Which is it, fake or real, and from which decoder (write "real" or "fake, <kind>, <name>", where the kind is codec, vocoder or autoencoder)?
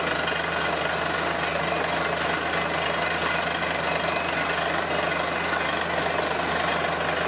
real